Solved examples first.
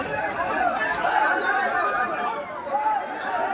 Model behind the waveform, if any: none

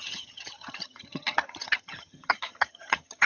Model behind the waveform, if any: vocoder, HiFi-GAN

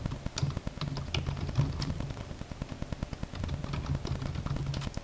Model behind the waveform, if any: none